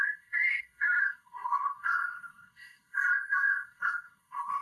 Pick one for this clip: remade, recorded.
remade